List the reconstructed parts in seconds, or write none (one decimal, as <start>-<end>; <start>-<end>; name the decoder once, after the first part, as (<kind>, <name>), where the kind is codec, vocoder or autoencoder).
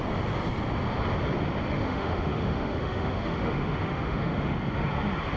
1.7-4.6 (autoencoder, DAC-VAE)